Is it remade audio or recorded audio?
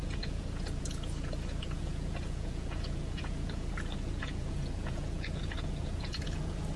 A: remade